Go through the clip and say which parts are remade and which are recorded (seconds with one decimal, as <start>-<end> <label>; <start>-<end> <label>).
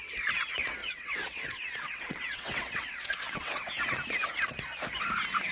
0.0-0.8 recorded; 0.8-3.7 remade; 3.7-5.5 recorded